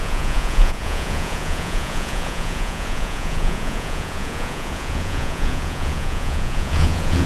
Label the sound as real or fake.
fake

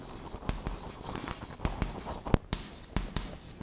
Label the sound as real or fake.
real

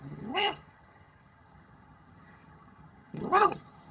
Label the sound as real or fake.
fake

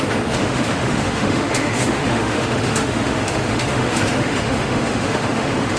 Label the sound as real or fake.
fake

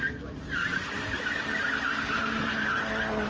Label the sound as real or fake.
real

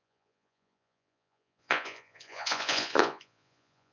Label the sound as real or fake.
fake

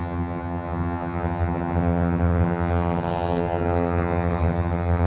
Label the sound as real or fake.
fake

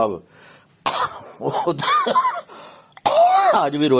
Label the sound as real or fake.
real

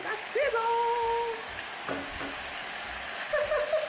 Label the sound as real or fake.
real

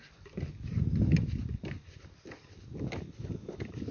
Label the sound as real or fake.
real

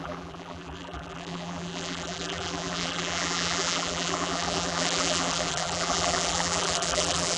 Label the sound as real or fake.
fake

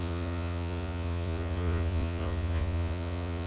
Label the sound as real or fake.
fake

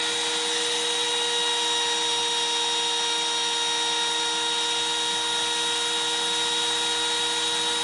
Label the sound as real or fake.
real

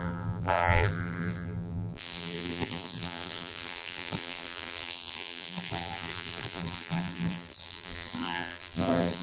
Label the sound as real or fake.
fake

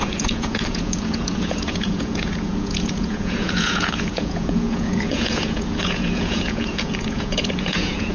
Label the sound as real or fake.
fake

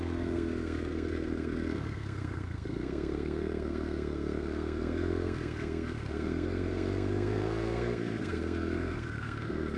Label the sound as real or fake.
fake